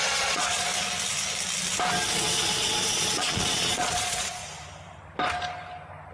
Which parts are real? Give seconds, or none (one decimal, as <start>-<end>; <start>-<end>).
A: 0.7-2.1; 4.4-6.1